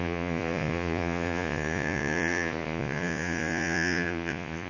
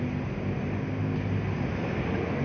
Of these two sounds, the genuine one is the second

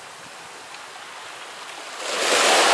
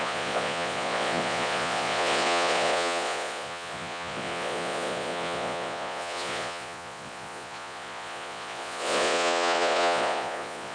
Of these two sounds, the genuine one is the first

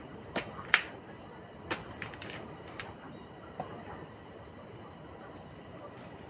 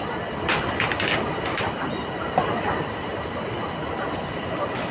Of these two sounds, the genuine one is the second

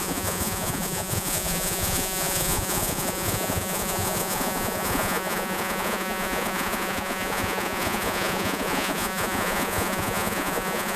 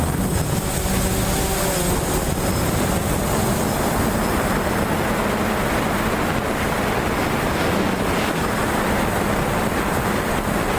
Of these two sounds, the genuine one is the second